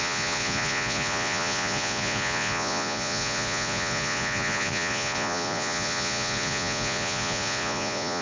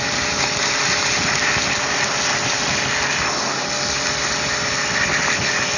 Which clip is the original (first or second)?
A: second